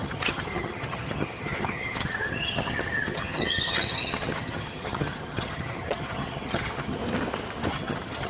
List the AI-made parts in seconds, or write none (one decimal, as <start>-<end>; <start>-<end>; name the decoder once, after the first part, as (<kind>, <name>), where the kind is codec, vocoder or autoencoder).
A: 0.0-7.0 (vocoder, HiFi-GAN); 7.7-8.3